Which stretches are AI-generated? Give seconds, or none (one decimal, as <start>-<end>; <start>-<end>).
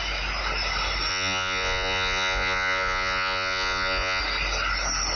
1.1-4.2